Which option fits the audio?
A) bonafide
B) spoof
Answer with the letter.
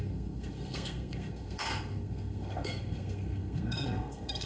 B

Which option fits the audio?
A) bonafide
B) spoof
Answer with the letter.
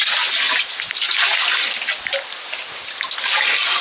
A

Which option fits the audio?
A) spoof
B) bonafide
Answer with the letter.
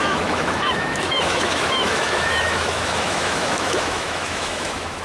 A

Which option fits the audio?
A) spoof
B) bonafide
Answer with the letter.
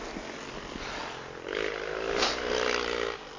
B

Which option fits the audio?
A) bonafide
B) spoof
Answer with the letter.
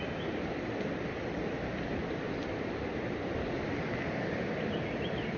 A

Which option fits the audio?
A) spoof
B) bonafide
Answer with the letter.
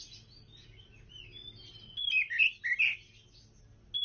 B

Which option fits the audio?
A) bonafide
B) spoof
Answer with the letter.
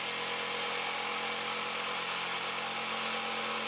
A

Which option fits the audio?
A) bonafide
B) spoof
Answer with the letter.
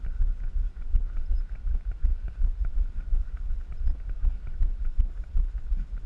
A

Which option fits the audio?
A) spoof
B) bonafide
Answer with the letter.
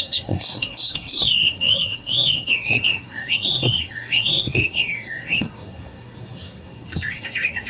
A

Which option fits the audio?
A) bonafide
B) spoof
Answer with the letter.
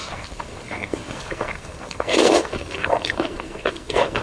B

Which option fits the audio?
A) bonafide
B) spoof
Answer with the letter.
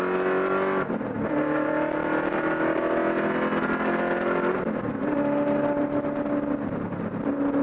A